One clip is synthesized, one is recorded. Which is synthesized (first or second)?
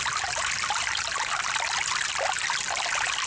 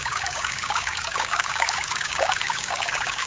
second